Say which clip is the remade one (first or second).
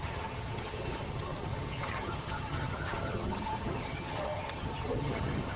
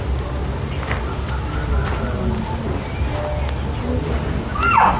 first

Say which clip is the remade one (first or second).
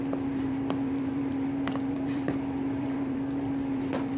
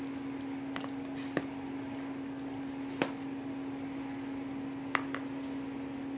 first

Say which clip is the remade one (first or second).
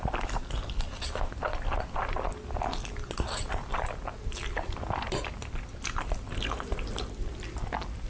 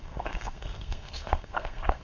second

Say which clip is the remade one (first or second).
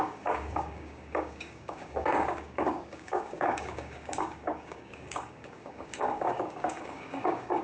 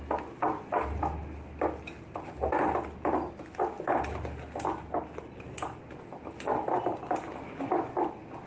first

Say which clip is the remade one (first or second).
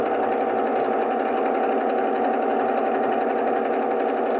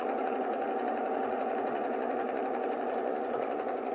second